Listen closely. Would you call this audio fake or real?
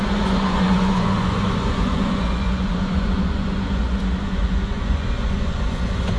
fake